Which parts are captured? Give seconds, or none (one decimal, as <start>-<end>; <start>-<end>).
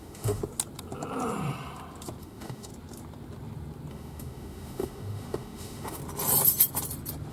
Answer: 0.4-2.2; 2.7-3.9; 6.0-7.3